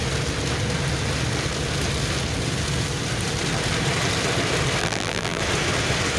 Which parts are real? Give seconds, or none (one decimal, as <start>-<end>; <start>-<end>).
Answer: 0.0-4.8; 5.4-6.2